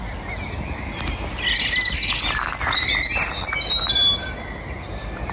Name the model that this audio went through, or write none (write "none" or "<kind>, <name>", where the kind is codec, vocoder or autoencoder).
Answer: none